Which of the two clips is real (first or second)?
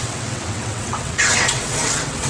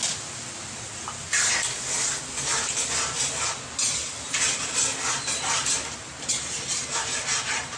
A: second